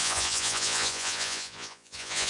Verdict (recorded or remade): remade